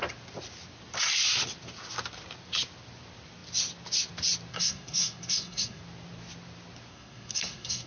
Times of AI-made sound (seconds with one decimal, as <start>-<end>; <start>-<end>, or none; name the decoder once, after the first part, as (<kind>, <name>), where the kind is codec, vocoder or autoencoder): 4.5-5.8 (codec, SNAC); 6.9-7.9